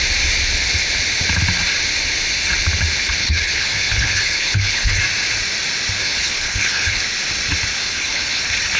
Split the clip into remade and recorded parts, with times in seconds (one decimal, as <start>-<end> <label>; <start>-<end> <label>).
0.0-3.2 recorded; 3.2-5.0 remade; 5.0-6.0 recorded; 6.0-7.0 remade; 7.0-7.8 recorded; 7.8-8.4 remade; 8.4-8.8 recorded